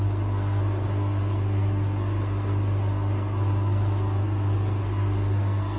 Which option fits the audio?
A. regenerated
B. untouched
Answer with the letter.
A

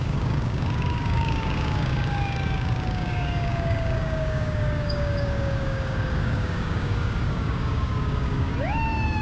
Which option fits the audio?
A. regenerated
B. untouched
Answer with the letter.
A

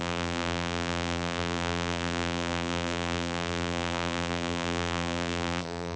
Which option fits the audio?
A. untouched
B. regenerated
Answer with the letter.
B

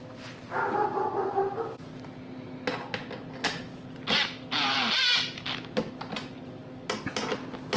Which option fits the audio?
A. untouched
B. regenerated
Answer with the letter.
A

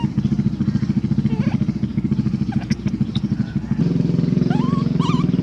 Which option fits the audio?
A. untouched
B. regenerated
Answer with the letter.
A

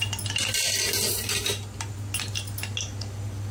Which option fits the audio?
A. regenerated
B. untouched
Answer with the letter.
B